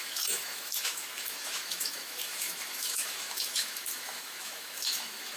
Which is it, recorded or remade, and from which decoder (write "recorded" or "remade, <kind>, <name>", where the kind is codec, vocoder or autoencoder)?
remade, autoencoder, DAC-VAE